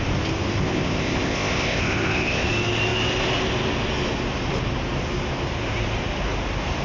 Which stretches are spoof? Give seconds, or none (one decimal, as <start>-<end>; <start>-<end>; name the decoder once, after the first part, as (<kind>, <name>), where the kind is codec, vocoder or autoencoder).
0.6-2.5 (codec, ZipCodec)

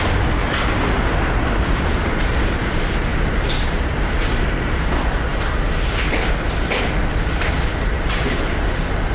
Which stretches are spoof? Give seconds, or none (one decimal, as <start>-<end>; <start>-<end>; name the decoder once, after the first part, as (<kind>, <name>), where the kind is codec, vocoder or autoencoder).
none

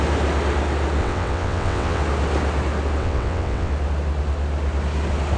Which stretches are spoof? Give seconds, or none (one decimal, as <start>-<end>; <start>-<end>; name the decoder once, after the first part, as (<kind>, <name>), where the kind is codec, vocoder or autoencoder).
1.0-2.0 (vocoder, WaveNeXt); 3.0-3.7

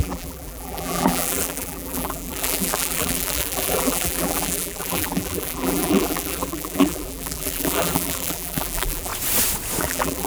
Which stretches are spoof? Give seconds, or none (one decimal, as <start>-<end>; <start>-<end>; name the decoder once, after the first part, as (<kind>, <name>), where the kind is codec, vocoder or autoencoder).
0.0-9.1 (vocoder, BigVGAN v2); 9.8-10.3

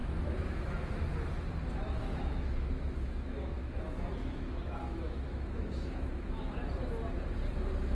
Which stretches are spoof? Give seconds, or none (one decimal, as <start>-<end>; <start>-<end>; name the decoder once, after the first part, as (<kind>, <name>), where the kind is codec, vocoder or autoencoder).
0.0-0.9 (autoencoder, DAC-VAE); 2.0-6.6

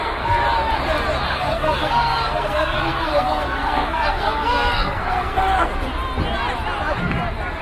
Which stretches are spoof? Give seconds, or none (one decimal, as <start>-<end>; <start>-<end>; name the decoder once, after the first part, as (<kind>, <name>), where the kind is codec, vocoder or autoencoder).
0.0-0.4 (codec, SNAC); 1.3-5.7